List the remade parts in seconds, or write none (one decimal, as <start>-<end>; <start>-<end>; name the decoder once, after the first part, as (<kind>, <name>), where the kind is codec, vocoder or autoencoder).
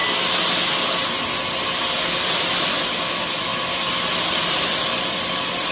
1.5-3.5 (vocoder, BigVGAN v2); 4.2-5.7